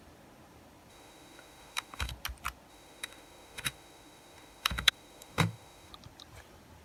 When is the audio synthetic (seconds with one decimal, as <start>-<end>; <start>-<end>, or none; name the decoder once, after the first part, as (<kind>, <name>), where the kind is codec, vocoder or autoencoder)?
0.9-2.1 (autoencoder, DAC-VAE); 2.7-5.9

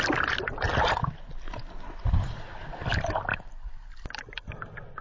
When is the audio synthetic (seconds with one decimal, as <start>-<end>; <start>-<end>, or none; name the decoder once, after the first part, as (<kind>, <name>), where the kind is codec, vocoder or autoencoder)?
none

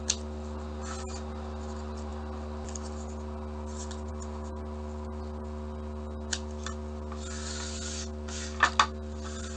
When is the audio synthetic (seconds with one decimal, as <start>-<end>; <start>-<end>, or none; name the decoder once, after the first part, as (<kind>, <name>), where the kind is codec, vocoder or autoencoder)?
none

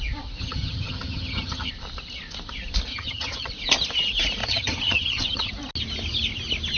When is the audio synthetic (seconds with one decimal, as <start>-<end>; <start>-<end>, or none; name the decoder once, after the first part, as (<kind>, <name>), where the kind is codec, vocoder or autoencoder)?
0.4-1.7 (vocoder, HiFi-GAN); 2.9-3.5; 4.4-5.5

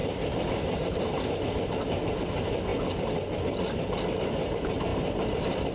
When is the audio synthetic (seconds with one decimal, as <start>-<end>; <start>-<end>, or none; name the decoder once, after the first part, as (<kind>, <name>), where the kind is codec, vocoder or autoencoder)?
none

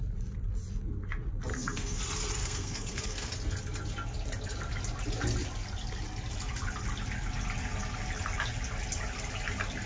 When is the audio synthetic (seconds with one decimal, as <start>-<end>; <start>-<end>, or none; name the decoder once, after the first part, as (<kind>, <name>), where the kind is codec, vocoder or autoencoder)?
1.5-2.0 (codec, SNAC); 2.4-3.3

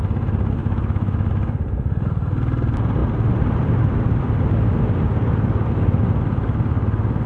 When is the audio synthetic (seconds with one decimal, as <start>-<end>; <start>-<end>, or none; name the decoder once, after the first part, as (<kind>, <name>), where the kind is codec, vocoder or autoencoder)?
0.6-1.3 (autoencoder, DAC-VAE)

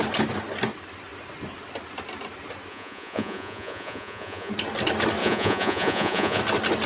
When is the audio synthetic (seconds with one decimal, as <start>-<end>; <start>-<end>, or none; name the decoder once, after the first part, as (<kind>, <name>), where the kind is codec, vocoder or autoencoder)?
2.7-4.5 (vocoder, Vocos); 5.2-6.4